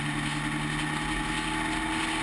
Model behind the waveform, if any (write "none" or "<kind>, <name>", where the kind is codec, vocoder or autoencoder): none